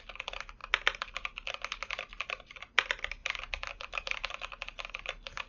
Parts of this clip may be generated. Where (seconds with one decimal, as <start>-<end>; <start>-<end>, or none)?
none

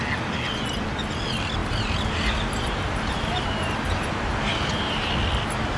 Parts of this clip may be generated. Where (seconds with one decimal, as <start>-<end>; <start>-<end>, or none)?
1.6-5.1

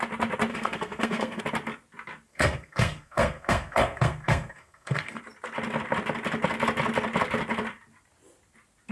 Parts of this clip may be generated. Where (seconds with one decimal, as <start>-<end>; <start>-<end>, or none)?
0.5-1.4; 2.3-5.2

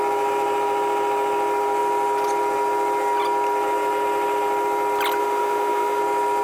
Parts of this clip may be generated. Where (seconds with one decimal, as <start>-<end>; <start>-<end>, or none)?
5.2-6.0

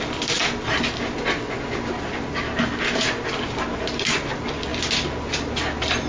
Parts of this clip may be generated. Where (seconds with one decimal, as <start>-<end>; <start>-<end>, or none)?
none

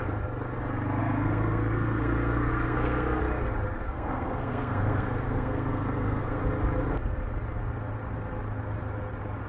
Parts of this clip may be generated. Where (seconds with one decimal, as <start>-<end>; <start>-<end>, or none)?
1.0-3.2; 3.8-6.4